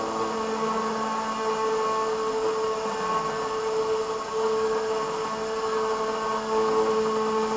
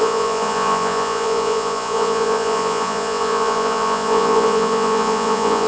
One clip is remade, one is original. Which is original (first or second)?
first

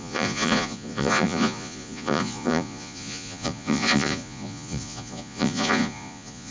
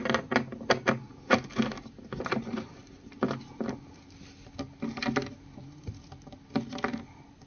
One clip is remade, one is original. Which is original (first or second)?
second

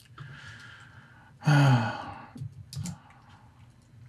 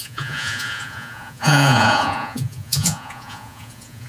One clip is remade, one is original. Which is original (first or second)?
first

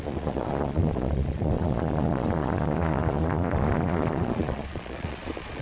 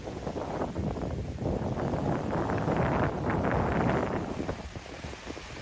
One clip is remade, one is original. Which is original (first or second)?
second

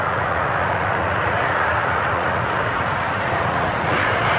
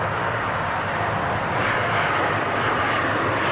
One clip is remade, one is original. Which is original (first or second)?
second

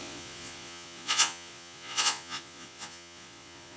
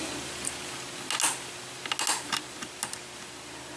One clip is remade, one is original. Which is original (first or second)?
second